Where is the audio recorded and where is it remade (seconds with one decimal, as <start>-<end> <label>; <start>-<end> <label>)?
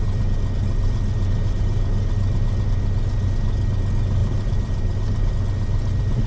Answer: 0.0-4.2 recorded; 4.2-5.3 remade; 5.3-6.3 recorded